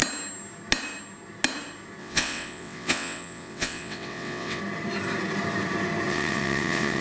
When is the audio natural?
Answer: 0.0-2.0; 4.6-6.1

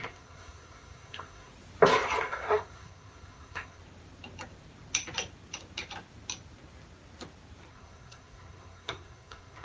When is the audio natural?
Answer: 1.5-2.2; 3.8-7.7

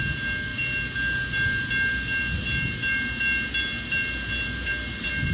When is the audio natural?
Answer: 0.0-5.3

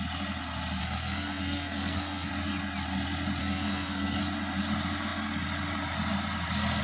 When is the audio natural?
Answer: 0.0-0.8; 2.3-3.4; 4.2-6.8

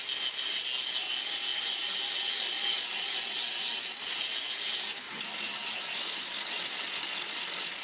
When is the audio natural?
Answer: 0.0-7.8

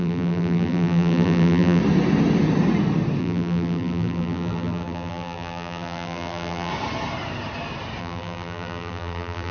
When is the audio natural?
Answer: 1.8-3.2; 6.7-8.0

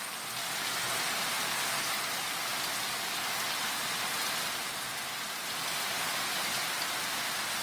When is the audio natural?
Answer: 0.0-7.6